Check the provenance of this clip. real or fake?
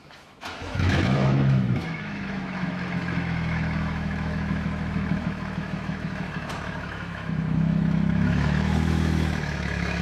fake